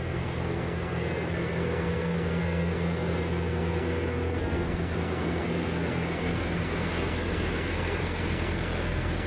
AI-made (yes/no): yes